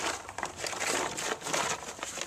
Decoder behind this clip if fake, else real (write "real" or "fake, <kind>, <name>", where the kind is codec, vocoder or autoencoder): fake, vocoder, BigVGAN v2